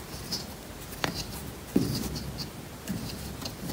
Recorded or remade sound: recorded